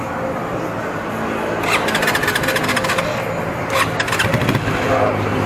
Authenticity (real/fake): real